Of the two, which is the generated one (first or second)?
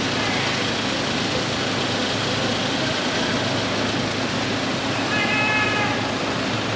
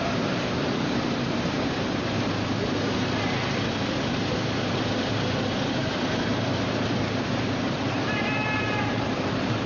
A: second